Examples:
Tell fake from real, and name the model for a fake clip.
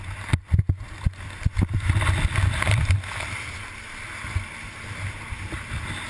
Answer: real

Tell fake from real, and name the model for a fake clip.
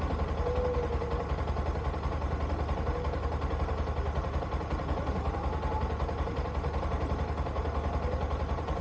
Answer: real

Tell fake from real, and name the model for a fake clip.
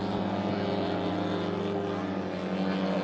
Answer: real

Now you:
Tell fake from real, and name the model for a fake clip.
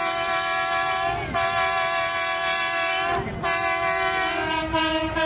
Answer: real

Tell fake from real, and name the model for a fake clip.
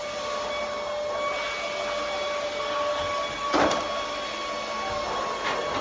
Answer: real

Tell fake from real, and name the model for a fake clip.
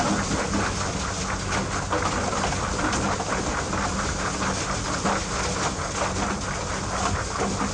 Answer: real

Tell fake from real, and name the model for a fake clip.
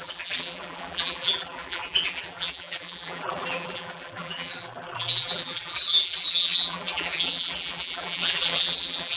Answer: fake, vocoder, BigVGAN v2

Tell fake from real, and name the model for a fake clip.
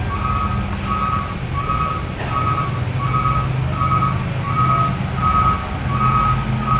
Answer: real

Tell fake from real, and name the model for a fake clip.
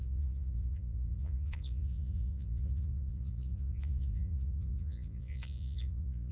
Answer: fake, vocoder, Vocos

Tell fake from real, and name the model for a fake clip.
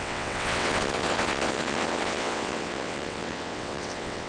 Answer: fake, vocoder, WaveNeXt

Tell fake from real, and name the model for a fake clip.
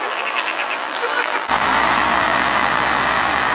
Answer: fake, vocoder, BigVGAN v2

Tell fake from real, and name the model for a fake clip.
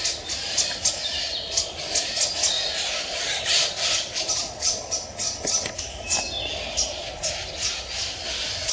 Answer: real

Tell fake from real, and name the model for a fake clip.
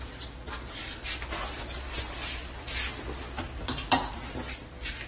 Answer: real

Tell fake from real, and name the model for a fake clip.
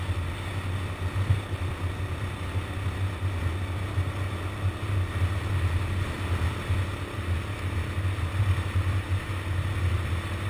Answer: real